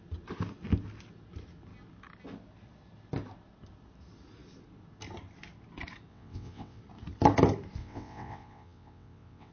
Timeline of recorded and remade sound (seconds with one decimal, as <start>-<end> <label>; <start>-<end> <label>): 0.0-6.1 recorded; 6.1-6.8 remade; 6.8-7.8 recorded; 7.8-9.5 remade